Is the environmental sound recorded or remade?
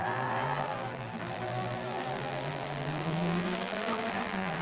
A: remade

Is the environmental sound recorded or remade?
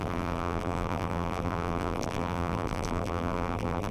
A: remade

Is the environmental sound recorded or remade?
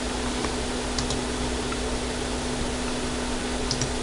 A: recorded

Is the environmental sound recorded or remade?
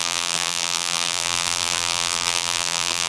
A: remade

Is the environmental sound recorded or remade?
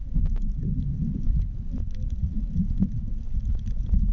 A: recorded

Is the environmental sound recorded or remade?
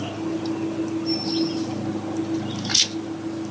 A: recorded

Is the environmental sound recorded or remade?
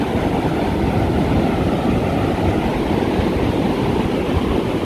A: recorded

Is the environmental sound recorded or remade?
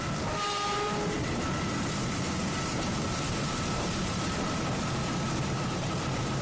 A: remade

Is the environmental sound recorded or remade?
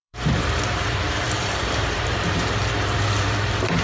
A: remade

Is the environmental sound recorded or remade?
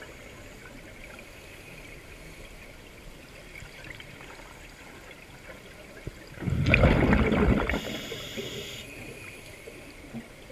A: recorded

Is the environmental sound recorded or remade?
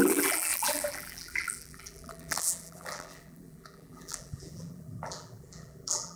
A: remade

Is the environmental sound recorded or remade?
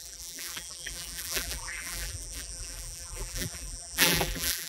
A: remade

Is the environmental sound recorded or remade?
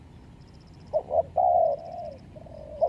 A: recorded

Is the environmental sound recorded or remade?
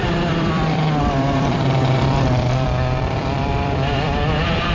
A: remade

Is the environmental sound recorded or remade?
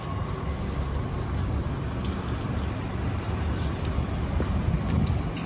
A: recorded